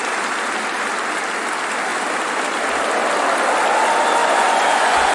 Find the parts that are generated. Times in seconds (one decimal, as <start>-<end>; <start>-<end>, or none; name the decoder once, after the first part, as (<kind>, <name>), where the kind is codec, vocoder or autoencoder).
4.2-5.1 (vocoder, Vocos)